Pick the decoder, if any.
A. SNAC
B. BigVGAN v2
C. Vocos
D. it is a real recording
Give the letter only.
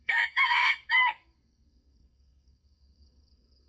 A